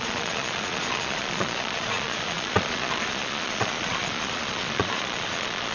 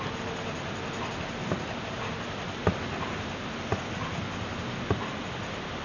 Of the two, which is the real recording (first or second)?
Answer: second